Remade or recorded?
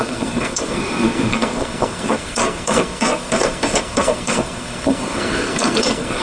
remade